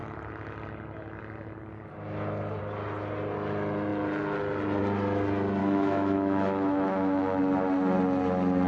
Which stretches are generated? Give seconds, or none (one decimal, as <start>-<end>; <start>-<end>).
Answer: 5.6-7.4